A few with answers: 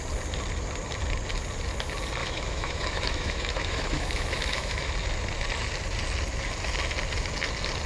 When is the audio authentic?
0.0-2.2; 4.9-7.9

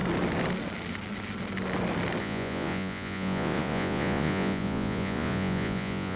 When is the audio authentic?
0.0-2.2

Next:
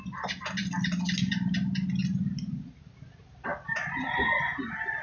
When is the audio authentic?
0.0-5.0

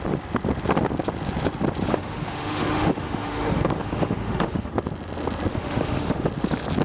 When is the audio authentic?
0.0-1.9; 4.7-5.5; 6.3-6.8